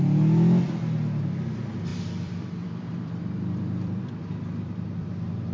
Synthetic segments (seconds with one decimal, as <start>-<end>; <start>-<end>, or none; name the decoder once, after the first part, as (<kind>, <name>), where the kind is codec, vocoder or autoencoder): 1.9-5.5 (vocoder, BigVGAN v2)